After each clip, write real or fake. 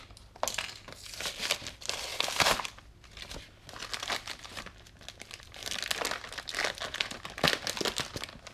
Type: real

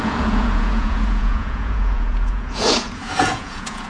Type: fake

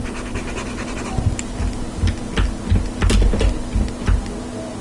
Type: real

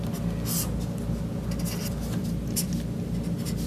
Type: real